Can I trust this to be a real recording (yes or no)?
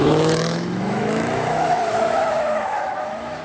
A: no